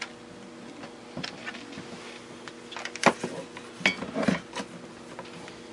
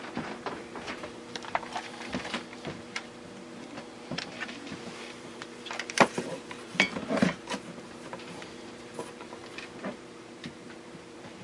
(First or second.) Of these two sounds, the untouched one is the first